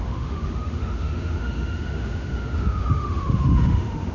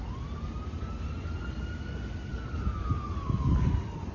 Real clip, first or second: second